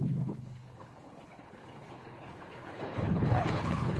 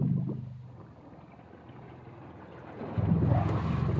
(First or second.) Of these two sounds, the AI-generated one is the first